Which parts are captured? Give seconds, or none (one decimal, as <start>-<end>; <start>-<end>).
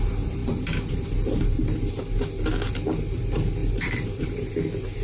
0.0-0.4; 1.4-3.6; 4.5-5.0